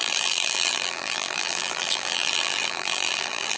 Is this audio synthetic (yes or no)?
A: yes